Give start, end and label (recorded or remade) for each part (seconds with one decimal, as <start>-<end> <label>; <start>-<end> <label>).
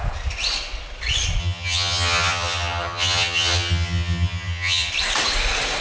0.0-1.4 recorded; 1.4-4.9 remade; 4.9-5.8 recorded